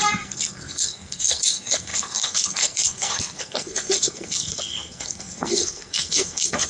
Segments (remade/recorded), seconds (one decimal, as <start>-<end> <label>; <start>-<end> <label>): 0.0-6.7 remade